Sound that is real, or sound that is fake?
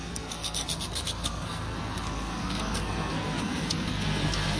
fake